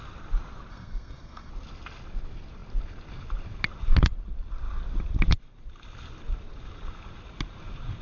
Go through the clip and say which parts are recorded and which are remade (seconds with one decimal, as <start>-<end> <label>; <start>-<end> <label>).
0.0-0.7 recorded; 0.7-1.5 remade; 1.5-8.0 recorded

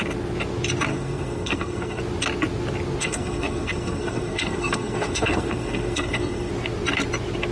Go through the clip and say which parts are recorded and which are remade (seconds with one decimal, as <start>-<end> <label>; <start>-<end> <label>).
0.0-0.9 recorded; 0.9-2.0 remade; 2.0-3.0 recorded; 3.0-6.5 remade; 6.5-7.5 recorded

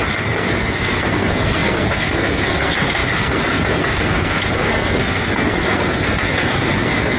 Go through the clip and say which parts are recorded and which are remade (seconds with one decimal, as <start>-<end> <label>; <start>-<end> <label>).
0.0-7.2 remade

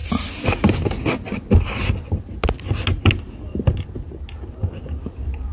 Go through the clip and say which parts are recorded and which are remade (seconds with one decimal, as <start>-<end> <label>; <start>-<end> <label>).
0.0-5.5 recorded

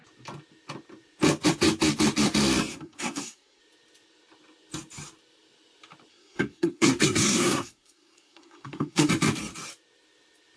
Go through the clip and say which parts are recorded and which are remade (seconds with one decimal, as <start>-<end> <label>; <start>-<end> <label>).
0.0-2.7 recorded; 2.7-3.6 remade; 3.6-6.1 recorded; 6.1-9.1 remade; 9.1-10.6 recorded